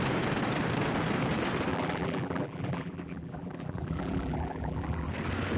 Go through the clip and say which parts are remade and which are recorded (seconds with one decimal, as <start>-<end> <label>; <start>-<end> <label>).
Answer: 0.0-1.7 recorded; 1.7-5.1 remade; 5.1-5.6 recorded